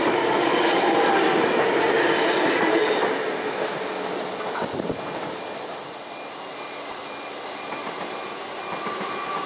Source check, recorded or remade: recorded